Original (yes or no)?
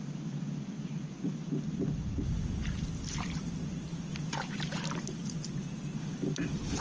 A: yes